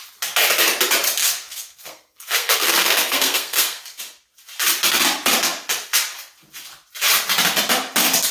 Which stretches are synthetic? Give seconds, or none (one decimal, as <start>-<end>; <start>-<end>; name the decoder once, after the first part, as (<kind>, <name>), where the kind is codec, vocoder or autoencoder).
1.2-4.0 (codec, SNAC)